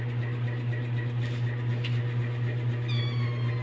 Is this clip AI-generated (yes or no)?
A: no